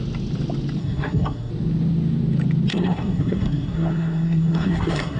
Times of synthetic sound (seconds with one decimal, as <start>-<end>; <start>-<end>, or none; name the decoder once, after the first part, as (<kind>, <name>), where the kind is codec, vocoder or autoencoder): 0.8-1.5 (codec, SNAC); 2.7-5.2